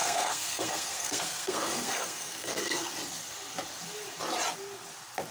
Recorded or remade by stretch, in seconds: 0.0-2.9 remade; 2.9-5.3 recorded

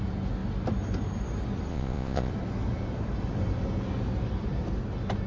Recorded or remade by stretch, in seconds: 0.0-1.7 recorded; 1.7-2.3 remade; 2.3-5.3 recorded

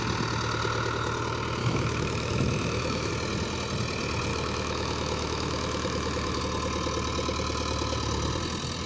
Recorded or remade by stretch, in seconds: 0.0-1.6 recorded; 1.6-3.1 remade; 3.1-4.3 recorded; 4.3-6.4 remade; 6.4-8.9 recorded

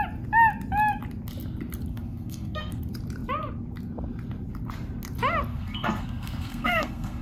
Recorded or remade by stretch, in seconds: 0.0-1.9 recorded; 1.9-2.8 remade; 2.8-5.5 recorded; 5.5-7.2 remade

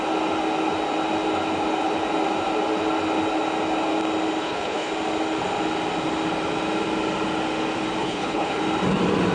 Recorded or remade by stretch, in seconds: 0.0-4.4 recorded; 4.4-4.9 remade; 4.9-8.0 recorded; 8.0-8.6 remade; 8.6-9.3 recorded

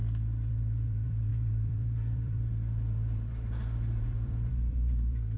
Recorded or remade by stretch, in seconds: 0.0-0.5 recorded; 0.5-5.4 remade

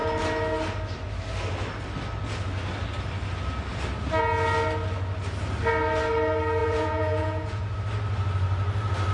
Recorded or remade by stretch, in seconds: 0.0-6.6 recorded; 6.6-7.7 remade; 7.7-9.1 recorded

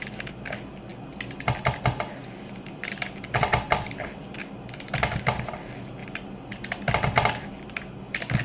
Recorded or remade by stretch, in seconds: 0.0-8.4 recorded